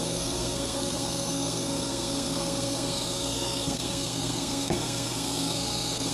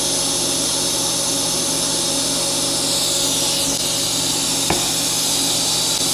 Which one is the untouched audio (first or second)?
second